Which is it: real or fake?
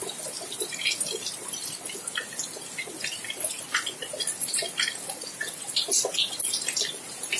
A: real